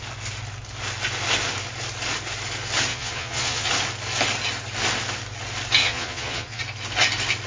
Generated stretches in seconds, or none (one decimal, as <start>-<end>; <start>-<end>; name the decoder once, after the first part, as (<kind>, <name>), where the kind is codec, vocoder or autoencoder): 2.9-3.7 (vocoder, Vocos); 5.8-6.6